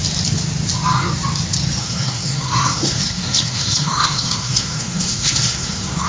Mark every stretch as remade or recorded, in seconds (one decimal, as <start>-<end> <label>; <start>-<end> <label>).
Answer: 0.0-1.8 recorded; 1.8-6.1 remade